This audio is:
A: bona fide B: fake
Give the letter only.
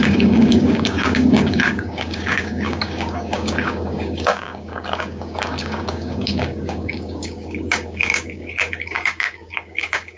B